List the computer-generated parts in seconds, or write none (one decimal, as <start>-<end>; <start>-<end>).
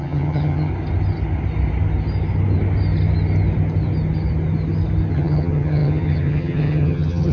0.0-0.7; 5.1-7.3